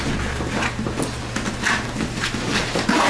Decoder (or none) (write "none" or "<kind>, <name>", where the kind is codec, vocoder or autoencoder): none